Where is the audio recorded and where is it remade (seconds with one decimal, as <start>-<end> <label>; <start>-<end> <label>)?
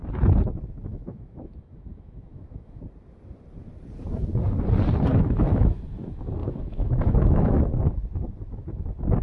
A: 0.0-0.9 recorded; 0.9-2.8 remade; 2.8-5.1 recorded; 5.1-5.8 remade; 5.8-6.4 recorded; 6.4-7.6 remade; 7.6-9.2 recorded